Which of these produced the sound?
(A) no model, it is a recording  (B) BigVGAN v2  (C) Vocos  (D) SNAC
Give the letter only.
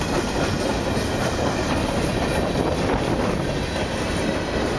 A